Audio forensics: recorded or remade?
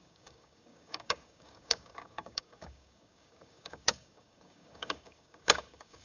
remade